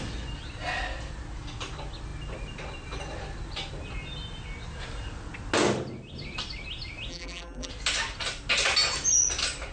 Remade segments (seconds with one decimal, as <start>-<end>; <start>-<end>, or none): 7.1-7.7